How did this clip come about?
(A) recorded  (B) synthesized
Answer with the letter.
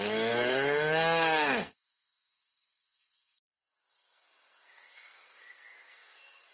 B